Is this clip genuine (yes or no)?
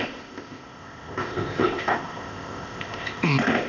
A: no